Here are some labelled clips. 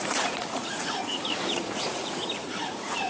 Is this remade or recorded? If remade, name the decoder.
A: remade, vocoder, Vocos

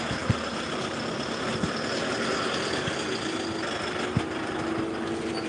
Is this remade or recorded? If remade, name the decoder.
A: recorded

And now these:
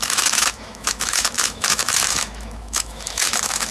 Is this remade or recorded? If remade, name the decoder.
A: remade, autoencoder, DAC-VAE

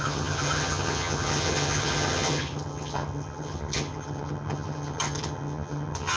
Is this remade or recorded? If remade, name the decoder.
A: remade, vocoder, HiFi-GAN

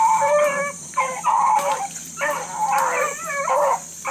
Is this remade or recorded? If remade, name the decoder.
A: recorded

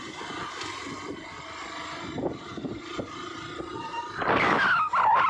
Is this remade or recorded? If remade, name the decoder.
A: recorded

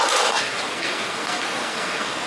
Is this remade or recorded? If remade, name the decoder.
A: remade, codec, SNAC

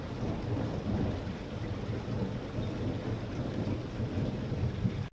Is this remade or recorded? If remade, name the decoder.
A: recorded